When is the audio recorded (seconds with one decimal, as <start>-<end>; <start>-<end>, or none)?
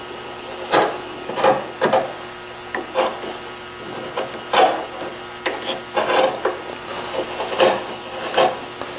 0.0-9.0